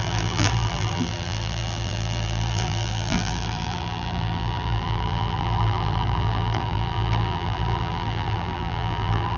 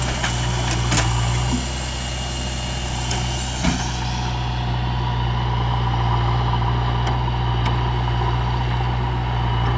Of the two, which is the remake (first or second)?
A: first